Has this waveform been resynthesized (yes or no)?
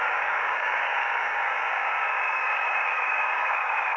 yes